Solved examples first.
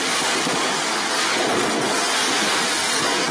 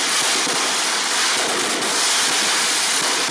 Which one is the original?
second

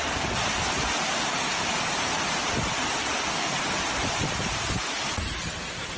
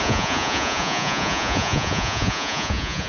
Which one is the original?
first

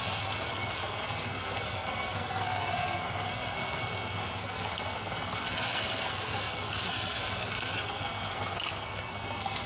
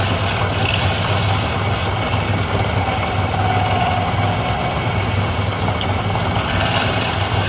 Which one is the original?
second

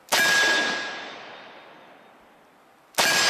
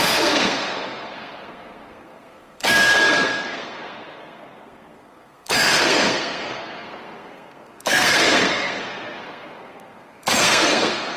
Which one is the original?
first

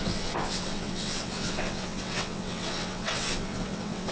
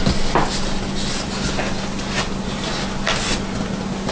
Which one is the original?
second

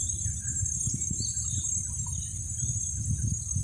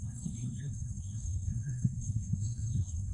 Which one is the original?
first